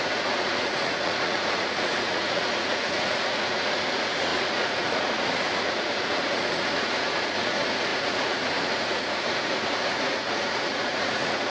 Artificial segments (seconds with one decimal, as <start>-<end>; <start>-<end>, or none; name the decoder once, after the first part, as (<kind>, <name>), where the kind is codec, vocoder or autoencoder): 0.0-11.5 (vocoder, Vocos)